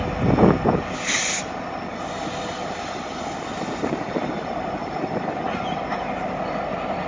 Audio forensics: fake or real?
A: real